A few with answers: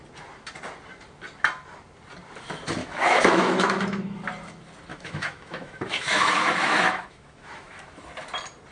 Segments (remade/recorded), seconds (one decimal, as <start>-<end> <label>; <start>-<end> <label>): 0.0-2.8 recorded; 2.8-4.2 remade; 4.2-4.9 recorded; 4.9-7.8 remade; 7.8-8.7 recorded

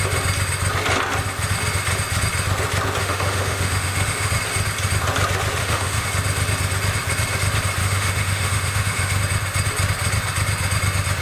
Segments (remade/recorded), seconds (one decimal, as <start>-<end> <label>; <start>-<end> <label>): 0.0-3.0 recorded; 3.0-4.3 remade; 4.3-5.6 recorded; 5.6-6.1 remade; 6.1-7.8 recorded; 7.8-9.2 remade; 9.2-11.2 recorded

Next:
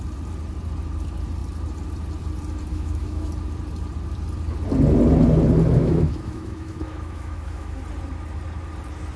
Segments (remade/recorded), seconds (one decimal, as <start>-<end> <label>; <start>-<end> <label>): 0.0-2.7 recorded; 2.7-3.3 remade; 3.3-5.8 recorded; 5.8-7.8 remade; 7.8-9.2 recorded

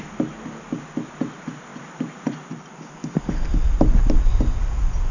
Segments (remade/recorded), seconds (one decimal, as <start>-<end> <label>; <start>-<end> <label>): 0.0-5.1 recorded

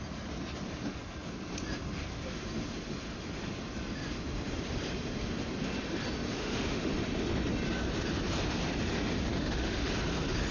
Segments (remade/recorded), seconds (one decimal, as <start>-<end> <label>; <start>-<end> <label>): 0.0-6.4 recorded; 6.4-6.9 remade; 6.9-9.3 recorded; 9.3-9.9 remade; 9.9-10.5 recorded

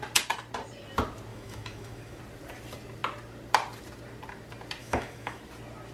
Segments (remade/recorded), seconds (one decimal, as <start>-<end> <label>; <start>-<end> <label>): 0.0-1.3 recorded; 1.3-2.2 remade; 2.2-4.8 recorded; 4.8-5.4 remade; 5.4-5.9 recorded

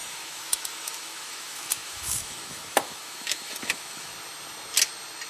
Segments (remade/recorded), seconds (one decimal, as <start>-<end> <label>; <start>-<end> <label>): 0.0-4.1 remade; 4.1-5.3 recorded